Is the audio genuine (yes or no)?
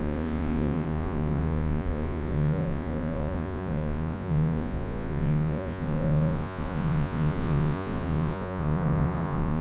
no